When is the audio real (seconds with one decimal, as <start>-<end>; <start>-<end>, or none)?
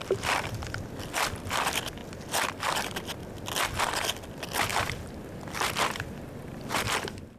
2.0-2.6; 3.2-3.8